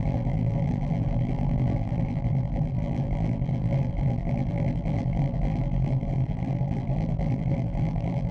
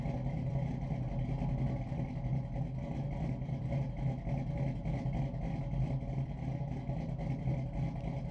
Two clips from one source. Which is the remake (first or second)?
first